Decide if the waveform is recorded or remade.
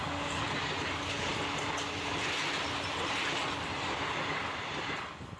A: recorded